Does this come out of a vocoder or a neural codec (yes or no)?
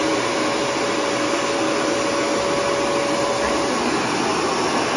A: no